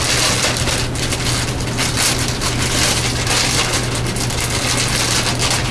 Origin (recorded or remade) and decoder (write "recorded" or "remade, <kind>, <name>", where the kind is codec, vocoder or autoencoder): recorded